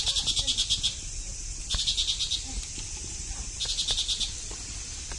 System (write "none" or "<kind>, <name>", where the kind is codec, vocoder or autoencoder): none